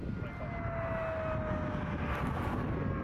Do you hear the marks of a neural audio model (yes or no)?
no